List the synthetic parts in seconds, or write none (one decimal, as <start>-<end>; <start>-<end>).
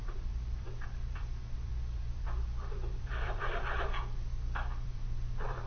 0.0-5.7